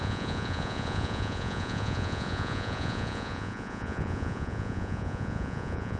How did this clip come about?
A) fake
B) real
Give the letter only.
A